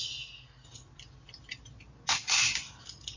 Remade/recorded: recorded